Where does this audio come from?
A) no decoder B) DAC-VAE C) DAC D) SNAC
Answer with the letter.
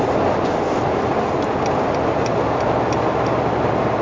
A